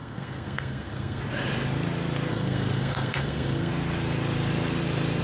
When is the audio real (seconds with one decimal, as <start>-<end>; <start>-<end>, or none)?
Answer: 1.2-2.3; 3.7-5.2